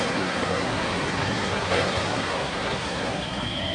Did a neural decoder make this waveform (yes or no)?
yes